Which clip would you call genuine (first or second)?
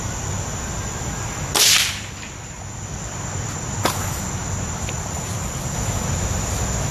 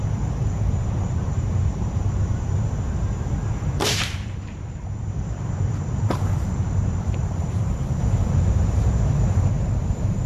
first